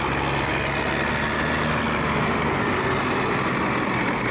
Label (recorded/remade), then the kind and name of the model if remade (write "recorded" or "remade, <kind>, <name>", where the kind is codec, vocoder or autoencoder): recorded